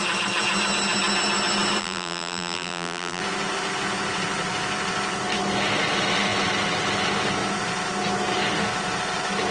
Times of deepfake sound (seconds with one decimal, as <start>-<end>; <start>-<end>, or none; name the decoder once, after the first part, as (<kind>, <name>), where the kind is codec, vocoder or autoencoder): 1.8-3.2 (vocoder, BigVGAN v2)